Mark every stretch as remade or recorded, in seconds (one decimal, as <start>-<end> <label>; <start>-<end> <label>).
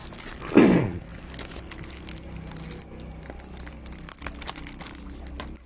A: 0.0-5.7 recorded